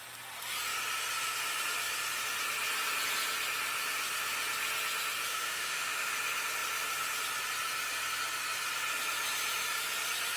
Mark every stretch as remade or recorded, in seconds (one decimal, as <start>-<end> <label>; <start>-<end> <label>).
0.0-5.3 recorded; 5.3-6.1 remade; 6.1-10.4 recorded